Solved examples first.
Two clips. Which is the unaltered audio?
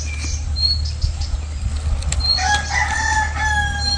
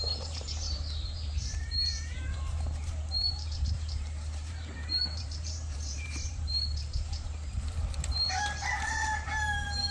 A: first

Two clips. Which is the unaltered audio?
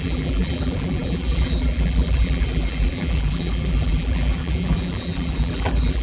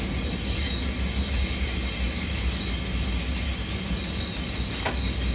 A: second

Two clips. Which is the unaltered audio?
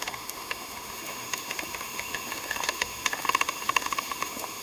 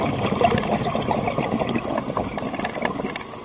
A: second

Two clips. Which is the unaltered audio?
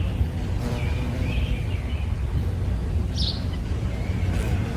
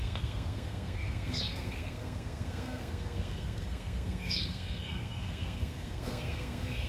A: first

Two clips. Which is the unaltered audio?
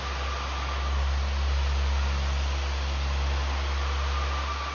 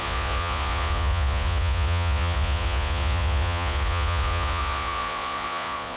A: first